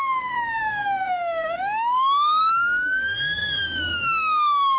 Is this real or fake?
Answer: fake